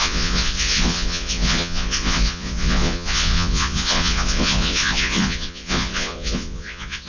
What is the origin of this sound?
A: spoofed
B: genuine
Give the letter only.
A